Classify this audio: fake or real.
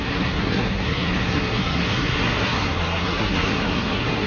fake